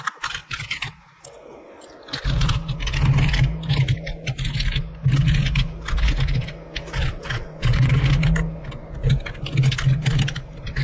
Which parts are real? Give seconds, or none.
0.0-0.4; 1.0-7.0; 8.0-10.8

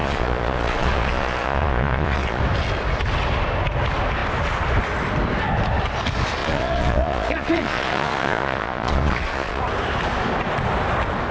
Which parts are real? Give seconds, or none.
2.4-6.4; 9.6-11.3

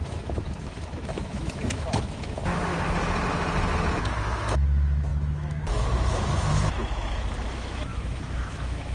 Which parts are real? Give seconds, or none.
2.7-3.9

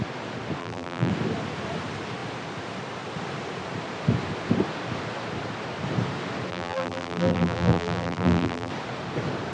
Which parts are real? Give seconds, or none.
0.0-0.6; 1.1-6.5; 8.7-9.5

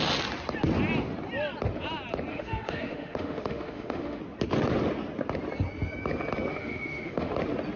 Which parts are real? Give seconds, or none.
0.0-2.3; 4.2-6.5; 7.3-7.8